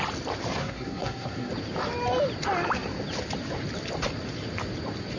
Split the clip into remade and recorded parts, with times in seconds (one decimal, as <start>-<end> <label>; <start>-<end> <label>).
0.0-0.6 recorded; 0.6-1.5 remade; 1.5-5.2 recorded